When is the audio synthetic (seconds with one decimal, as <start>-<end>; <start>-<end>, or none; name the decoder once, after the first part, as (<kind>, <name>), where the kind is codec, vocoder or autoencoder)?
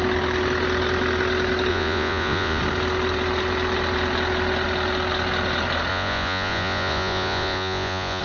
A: 1.7-2.6 (vocoder, Vocos); 5.9-8.2